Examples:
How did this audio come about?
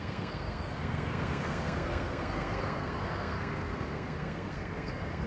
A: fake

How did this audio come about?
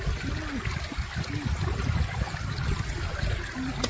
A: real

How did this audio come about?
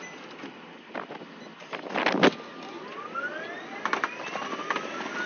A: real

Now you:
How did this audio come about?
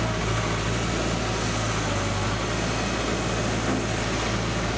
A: real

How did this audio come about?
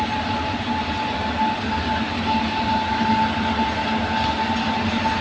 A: real